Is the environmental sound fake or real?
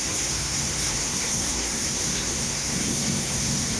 fake